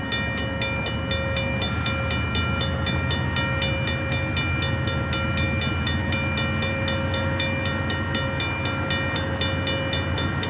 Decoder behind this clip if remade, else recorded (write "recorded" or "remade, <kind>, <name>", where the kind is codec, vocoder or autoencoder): recorded